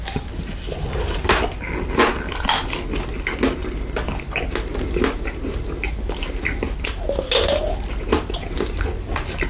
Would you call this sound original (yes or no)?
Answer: yes